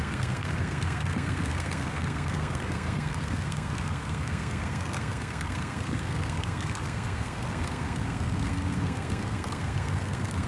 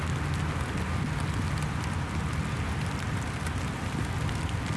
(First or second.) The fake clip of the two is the first